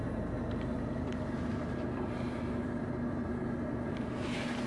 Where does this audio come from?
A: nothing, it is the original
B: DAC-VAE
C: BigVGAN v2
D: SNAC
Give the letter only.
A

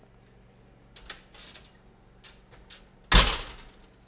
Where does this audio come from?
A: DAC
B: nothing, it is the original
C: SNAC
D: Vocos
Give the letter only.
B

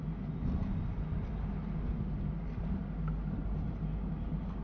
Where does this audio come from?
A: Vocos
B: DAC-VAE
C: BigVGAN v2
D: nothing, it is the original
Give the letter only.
D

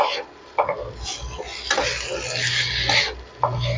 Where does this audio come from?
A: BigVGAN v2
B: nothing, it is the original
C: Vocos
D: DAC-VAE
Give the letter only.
B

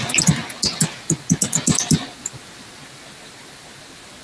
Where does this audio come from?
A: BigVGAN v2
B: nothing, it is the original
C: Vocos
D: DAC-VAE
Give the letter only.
B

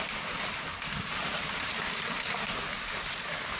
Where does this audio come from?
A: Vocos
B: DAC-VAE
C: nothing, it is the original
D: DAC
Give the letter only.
C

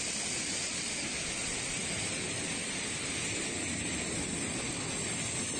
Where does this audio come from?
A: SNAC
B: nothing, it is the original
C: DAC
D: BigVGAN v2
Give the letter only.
B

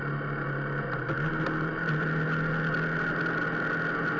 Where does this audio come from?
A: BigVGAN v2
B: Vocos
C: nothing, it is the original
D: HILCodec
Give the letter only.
C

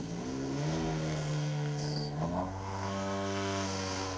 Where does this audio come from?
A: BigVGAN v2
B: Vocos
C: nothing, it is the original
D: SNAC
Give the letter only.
D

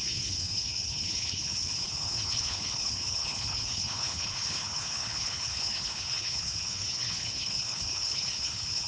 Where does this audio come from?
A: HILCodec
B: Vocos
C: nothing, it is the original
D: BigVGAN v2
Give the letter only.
A